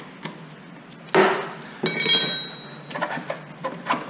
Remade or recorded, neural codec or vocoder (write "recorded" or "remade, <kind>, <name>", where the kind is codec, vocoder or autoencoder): recorded